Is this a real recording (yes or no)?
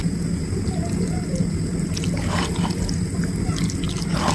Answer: yes